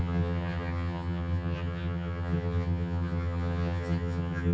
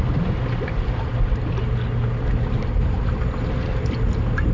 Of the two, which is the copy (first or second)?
first